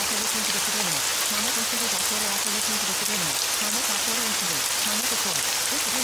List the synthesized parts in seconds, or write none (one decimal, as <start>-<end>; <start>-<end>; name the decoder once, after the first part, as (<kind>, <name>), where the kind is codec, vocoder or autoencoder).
none